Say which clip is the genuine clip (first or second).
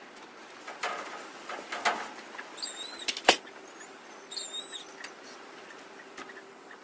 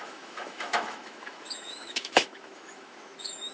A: first